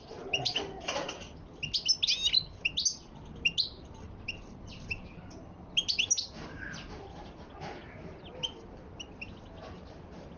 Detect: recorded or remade recorded